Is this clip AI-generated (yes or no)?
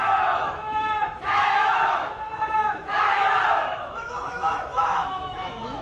yes